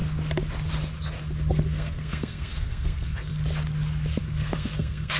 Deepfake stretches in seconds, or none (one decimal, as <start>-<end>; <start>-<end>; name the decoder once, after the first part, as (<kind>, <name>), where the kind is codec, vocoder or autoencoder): 1.5-3.3 (codec, SNAC); 4.2-5.2